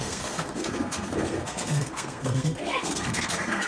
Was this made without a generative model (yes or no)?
no